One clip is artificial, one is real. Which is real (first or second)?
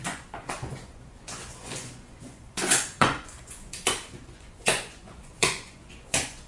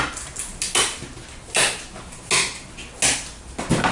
second